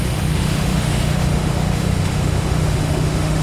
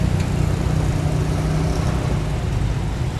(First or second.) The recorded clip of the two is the second